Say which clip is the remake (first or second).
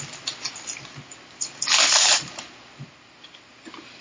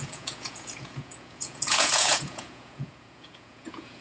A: second